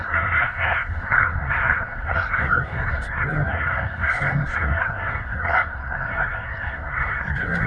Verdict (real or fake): fake